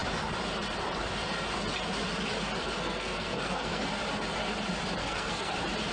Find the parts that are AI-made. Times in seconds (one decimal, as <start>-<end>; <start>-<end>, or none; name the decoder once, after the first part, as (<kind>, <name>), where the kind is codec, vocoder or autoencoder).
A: 2.6-3.8 (codec, SNAC); 5.0-5.5